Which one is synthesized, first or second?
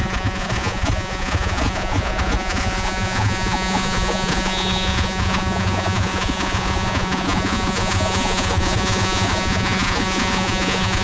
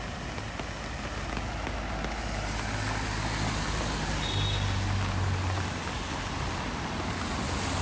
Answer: first